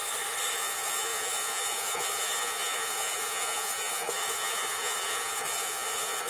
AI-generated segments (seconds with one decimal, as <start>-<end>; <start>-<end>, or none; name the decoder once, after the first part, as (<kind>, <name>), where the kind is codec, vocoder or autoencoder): 0.5-6.3 (vocoder, Vocos)